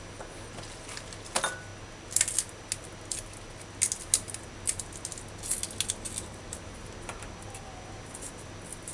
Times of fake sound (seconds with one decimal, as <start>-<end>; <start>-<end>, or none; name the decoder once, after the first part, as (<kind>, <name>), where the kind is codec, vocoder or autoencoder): none